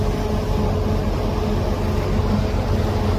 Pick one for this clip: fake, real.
real